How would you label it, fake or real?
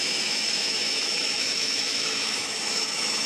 fake